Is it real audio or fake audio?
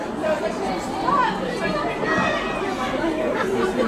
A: real